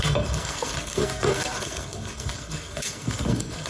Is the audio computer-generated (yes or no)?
yes